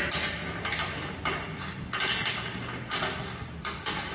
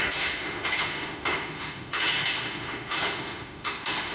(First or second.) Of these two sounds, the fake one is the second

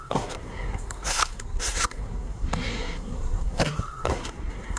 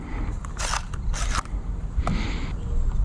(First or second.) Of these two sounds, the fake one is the first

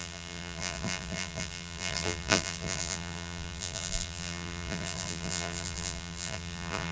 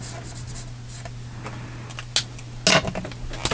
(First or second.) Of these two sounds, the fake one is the first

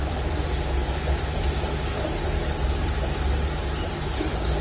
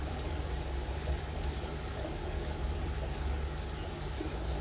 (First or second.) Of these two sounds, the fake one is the second